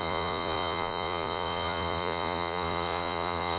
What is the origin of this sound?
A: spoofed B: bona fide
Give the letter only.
A